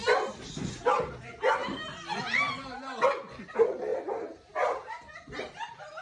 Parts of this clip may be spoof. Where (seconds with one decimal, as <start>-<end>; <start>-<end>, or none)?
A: 0.0-0.8